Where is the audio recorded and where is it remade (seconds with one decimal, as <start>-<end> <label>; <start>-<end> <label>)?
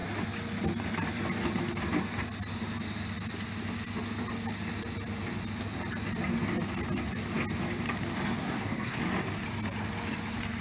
0.0-8.4 recorded; 8.4-9.0 remade; 9.0-10.6 recorded